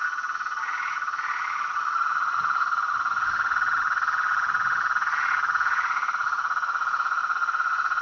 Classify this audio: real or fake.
real